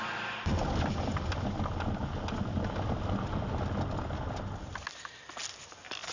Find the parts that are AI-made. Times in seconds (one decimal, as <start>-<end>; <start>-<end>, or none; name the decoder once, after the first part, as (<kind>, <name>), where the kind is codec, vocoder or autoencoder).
none